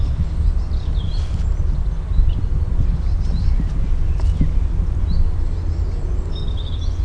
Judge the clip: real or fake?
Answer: real